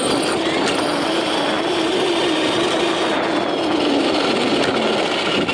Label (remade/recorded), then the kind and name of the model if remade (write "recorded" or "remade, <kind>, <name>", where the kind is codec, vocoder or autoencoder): recorded